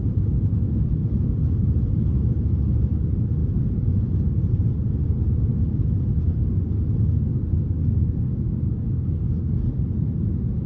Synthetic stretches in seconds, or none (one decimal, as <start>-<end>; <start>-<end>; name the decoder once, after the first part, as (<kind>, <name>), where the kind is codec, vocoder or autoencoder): 1.0-1.7 (codec, DAC); 7.3-9.5